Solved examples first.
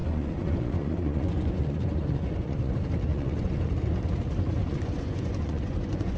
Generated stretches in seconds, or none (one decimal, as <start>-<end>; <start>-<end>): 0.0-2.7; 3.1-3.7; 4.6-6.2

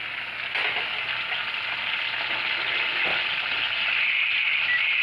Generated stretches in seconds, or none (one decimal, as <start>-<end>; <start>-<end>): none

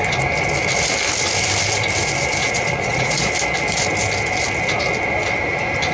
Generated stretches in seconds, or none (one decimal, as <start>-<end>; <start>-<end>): 2.4-3.3